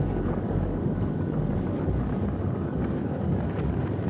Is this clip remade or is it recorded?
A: remade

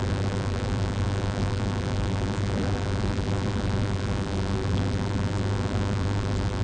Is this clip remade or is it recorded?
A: remade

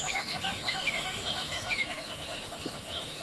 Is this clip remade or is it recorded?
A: remade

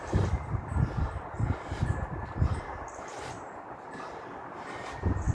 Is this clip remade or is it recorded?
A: recorded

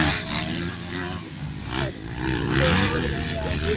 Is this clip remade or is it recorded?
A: recorded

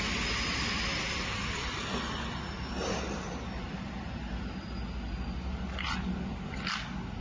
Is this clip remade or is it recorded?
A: recorded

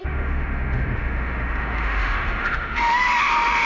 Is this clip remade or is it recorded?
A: remade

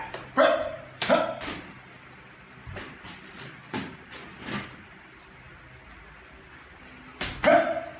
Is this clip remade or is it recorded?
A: recorded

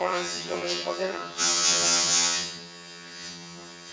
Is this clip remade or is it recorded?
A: remade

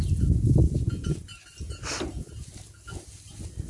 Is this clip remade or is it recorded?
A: recorded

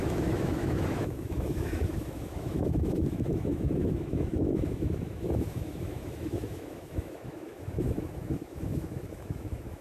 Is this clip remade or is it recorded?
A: remade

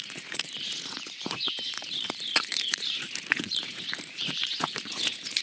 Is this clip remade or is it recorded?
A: remade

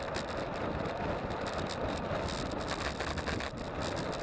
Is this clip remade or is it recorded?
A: recorded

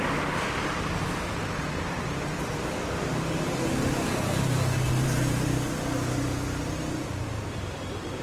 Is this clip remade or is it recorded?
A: recorded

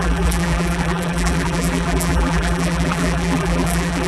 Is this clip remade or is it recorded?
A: remade